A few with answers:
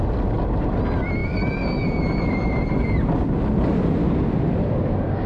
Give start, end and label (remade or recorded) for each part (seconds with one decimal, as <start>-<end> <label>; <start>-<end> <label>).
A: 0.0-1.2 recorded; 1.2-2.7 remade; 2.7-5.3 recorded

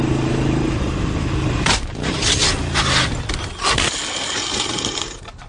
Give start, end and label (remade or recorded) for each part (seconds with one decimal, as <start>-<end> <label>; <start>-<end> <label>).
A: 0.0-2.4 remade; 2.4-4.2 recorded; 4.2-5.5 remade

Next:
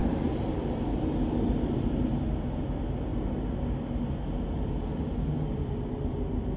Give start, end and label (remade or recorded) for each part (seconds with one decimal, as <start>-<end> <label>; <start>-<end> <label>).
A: 0.0-6.6 recorded

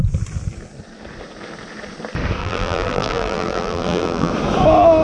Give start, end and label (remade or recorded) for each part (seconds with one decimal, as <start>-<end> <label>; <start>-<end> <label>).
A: 0.0-2.4 recorded; 2.4-4.3 remade; 4.3-5.0 recorded

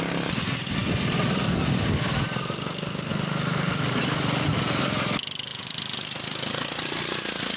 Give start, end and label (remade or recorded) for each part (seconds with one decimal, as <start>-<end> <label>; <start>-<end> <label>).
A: 0.0-3.1 recorded; 3.1-4.5 remade; 4.5-7.6 recorded

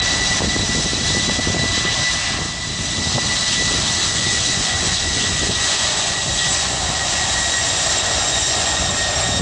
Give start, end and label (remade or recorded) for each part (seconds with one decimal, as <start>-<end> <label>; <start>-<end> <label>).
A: 0.0-4.1 recorded; 4.1-8.9 remade; 8.9-9.4 recorded

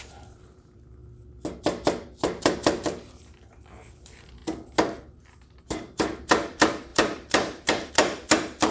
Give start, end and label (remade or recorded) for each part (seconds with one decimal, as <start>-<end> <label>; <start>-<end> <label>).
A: 0.0-1.0 remade; 1.0-2.4 recorded; 2.4-4.4 remade; 4.4-5.6 recorded; 5.6-8.7 remade

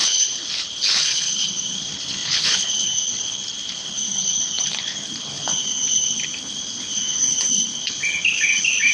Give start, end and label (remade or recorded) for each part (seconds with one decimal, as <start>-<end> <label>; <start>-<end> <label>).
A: 0.0-8.9 remade